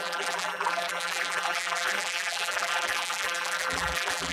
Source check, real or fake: fake